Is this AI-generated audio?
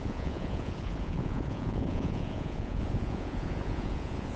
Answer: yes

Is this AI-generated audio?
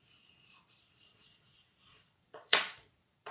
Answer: yes